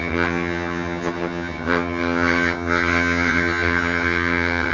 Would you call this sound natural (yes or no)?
no